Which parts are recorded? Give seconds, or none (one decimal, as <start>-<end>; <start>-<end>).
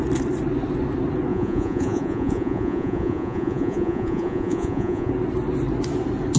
0.0-1.3; 5.1-6.4